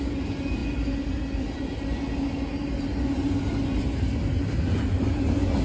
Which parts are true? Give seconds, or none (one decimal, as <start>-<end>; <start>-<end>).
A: 0.0-5.6